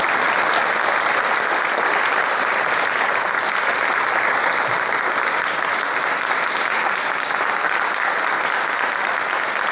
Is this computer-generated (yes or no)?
no